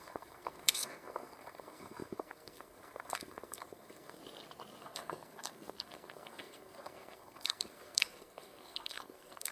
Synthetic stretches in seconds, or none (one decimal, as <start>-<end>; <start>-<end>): 0.0-4.2; 4.8-9.5